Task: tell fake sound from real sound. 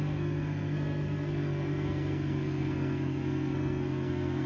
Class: fake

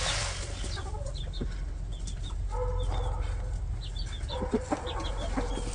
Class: real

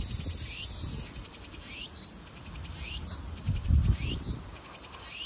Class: fake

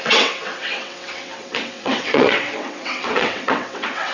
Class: fake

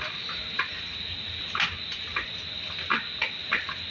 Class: real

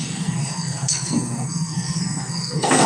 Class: fake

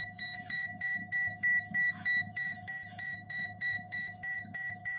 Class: fake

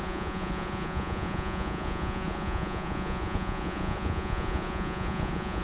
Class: fake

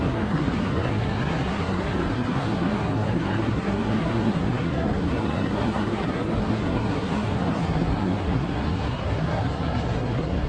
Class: fake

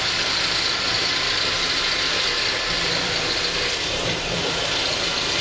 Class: fake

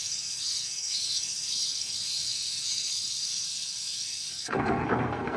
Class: fake